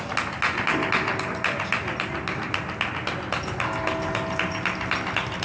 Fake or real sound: real